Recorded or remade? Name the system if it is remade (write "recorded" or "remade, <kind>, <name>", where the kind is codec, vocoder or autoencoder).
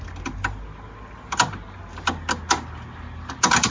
recorded